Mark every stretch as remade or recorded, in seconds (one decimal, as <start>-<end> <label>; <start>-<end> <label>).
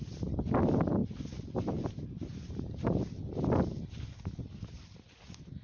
0.0-2.3 recorded; 2.3-3.0 remade; 3.0-5.6 recorded